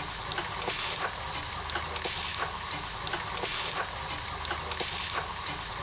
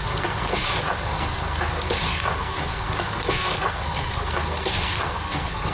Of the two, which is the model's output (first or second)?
second